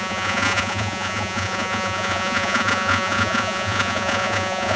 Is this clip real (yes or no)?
no